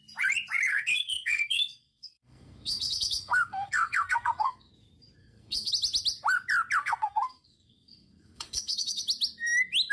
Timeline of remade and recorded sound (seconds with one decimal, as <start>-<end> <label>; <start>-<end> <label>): 0.0-0.7 recorded; 0.7-4.7 remade; 4.7-5.2 recorded; 5.2-5.7 remade; 5.7-6.8 recorded; 6.8-9.0 remade; 9.0-9.9 recorded